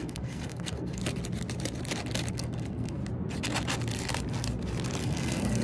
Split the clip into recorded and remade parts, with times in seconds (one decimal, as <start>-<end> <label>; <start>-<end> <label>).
0.0-1.0 remade; 1.0-2.3 recorded; 2.3-3.0 remade; 3.0-5.0 recorded; 5.0-5.6 remade